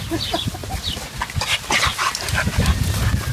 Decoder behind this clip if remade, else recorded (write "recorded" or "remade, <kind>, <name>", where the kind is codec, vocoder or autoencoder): recorded